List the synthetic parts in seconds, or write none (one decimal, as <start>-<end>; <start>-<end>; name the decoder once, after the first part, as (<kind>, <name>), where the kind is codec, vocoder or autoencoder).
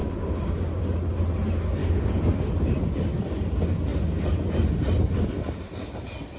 0.0-0.8 (codec, DAC); 1.8-2.5